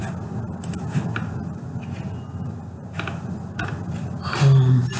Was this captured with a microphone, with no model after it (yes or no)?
yes